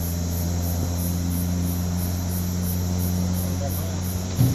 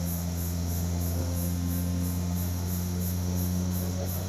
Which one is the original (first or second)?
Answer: first